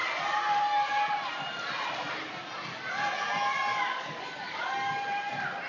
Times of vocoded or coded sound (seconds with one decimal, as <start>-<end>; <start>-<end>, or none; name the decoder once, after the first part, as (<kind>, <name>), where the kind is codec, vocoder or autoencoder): 3.7-4.9 (codec, DAC)